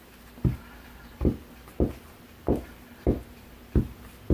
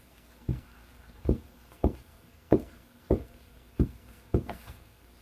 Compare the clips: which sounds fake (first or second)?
second